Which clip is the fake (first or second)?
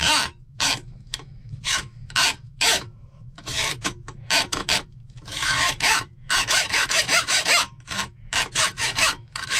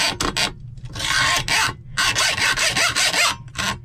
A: first